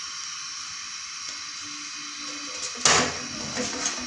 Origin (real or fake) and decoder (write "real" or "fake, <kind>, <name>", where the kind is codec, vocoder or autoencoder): real